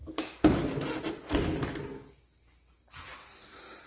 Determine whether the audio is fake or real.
real